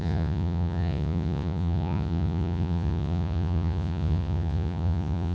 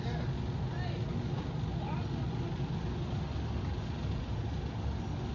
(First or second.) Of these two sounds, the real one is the second